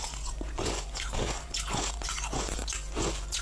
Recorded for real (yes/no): no